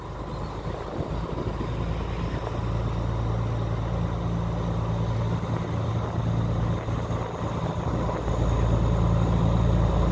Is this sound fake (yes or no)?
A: no